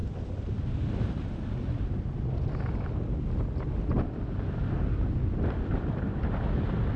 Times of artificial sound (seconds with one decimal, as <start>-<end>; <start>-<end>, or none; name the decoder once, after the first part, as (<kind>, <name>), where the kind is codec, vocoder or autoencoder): none